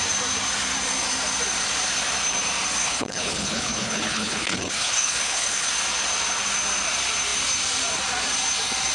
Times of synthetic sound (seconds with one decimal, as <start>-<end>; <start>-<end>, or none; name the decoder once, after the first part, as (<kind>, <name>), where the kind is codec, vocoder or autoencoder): 2.8-5.7 (codec, HILCodec)